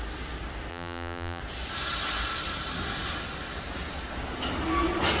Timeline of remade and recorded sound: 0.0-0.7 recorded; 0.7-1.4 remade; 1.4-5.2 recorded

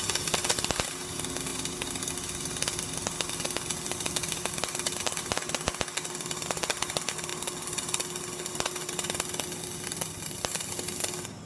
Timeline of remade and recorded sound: 0.0-1.5 recorded; 1.5-2.0 remade; 2.0-11.5 recorded